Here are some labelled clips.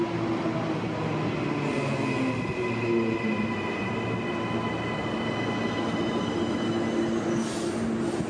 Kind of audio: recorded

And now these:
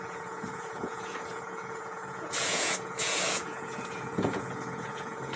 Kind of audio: remade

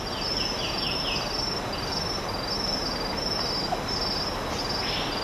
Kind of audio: recorded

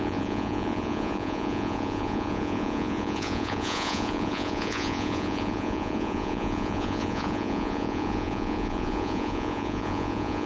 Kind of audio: remade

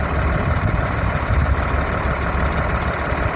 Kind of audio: recorded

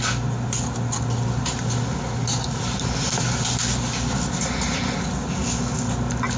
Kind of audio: recorded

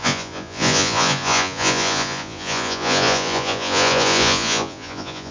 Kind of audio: remade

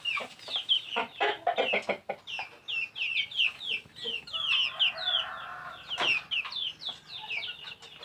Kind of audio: recorded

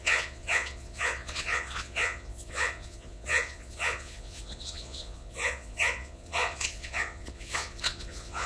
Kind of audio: remade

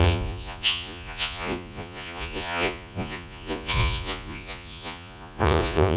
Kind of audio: remade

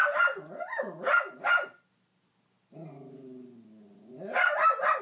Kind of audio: recorded